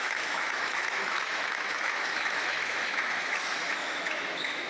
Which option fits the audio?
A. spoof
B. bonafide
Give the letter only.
A